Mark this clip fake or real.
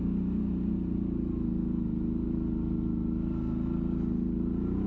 real